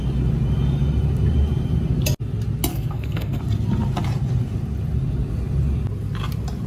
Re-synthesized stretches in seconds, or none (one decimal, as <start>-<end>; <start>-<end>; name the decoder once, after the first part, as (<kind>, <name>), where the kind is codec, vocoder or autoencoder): 2.7-3.4 (codec, SNAC)